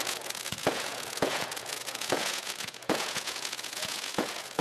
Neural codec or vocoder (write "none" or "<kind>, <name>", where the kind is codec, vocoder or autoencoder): vocoder, Vocos